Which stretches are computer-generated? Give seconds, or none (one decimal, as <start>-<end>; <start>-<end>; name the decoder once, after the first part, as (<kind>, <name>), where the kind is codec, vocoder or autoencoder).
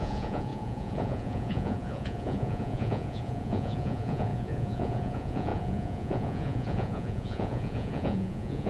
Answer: 0.0-8.7 (vocoder, Vocos)